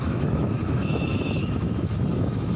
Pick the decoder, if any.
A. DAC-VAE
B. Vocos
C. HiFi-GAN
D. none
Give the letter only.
A